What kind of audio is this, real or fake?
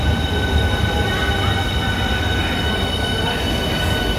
real